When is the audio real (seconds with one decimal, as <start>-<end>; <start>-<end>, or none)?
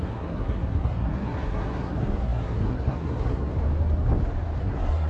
3.5-4.6